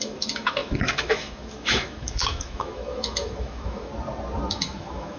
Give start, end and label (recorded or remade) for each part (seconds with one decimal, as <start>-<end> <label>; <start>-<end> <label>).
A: 0.0-3.9 remade; 3.9-4.5 recorded; 4.5-5.2 remade